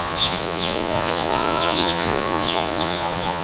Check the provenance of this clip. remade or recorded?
remade